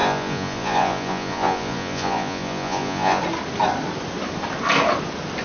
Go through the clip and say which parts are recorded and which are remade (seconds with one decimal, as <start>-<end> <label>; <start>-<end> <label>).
0.0-3.2 remade; 3.2-5.4 recorded